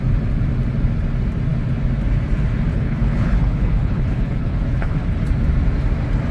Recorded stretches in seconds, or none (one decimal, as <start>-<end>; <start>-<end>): 0.0-2.7; 5.0-6.3